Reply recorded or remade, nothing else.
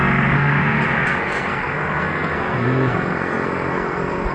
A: remade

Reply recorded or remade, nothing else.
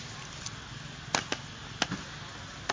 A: recorded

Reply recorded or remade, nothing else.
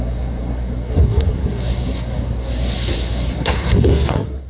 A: remade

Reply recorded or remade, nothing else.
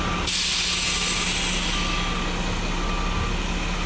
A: recorded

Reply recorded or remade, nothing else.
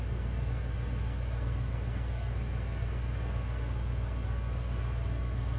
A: remade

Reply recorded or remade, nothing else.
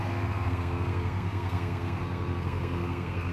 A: remade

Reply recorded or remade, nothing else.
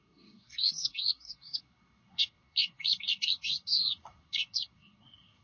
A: remade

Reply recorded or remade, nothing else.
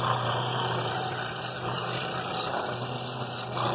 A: recorded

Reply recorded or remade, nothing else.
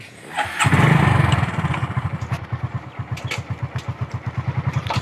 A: recorded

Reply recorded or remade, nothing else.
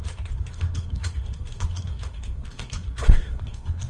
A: remade